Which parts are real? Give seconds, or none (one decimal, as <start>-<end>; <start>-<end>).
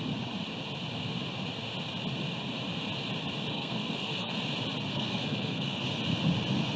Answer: 0.0-3.5; 4.3-4.9; 5.8-6.8